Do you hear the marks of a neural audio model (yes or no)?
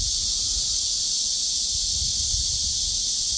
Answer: yes